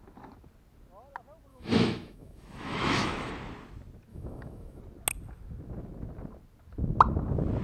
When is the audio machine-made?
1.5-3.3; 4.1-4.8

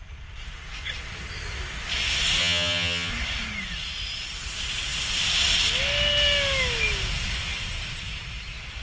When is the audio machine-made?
2.4-3.1